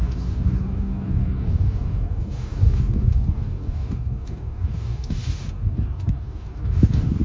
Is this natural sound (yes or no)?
no